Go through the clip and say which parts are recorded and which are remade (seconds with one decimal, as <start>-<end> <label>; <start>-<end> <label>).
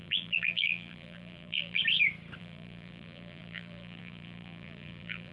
0.0-1.8 remade; 1.8-2.4 recorded; 2.4-5.3 remade